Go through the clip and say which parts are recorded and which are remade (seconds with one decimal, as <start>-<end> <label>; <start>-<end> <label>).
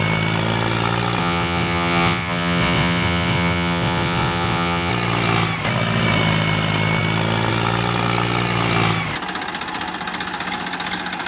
0.0-1.2 recorded; 1.2-4.9 remade; 4.9-11.3 recorded